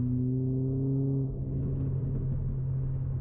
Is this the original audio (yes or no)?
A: yes